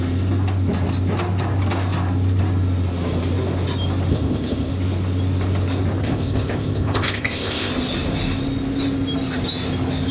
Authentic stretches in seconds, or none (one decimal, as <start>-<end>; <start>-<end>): 0.0-4.1; 4.7-6.0; 7.7-10.1